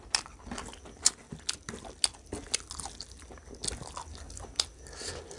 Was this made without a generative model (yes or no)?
yes